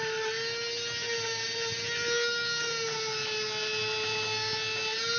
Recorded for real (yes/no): yes